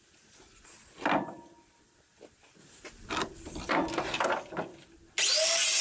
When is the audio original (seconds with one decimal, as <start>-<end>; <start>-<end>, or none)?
0.0-5.8